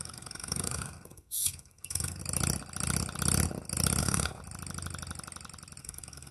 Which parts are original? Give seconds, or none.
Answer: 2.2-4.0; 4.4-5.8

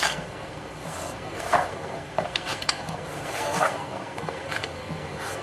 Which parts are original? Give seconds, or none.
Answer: none

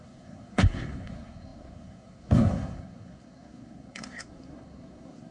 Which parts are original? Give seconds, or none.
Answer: none

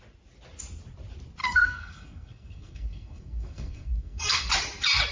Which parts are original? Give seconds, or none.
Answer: 0.0-1.4; 4.5-5.1

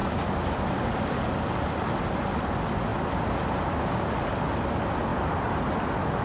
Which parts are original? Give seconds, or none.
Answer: 0.0-6.2

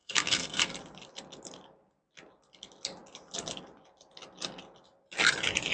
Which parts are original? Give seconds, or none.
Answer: 0.7-5.7

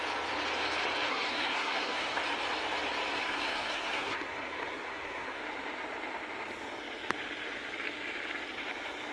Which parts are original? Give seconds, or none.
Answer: 0.0-1.1; 2.2-3.2; 5.4-9.1